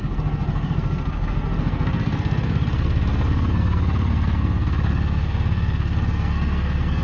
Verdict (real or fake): fake